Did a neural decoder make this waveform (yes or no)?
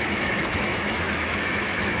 yes